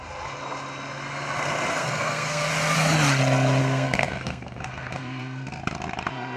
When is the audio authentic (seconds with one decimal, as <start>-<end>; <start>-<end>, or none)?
0.0-1.8; 2.4-3.6; 5.6-6.4